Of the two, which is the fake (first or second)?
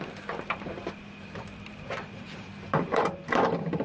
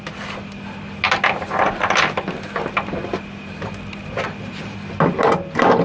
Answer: first